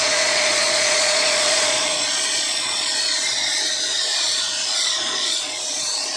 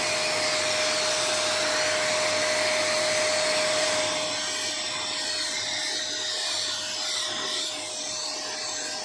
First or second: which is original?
second